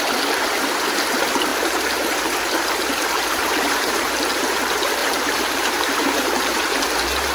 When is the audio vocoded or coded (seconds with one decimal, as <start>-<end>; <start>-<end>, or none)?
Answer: 1.5-4.1; 5.0-6.8